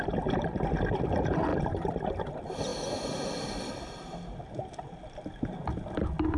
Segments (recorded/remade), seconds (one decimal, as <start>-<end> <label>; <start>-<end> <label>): 0.0-1.5 recorded; 1.5-2.3 remade; 2.3-6.4 recorded